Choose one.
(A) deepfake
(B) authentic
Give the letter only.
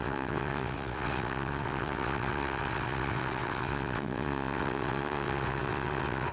A